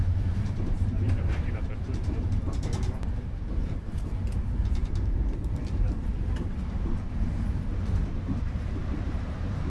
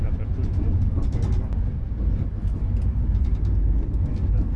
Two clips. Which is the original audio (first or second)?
second